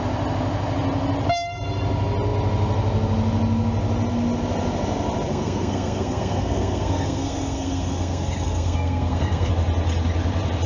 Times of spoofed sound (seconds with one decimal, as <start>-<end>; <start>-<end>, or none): 5.3-9.5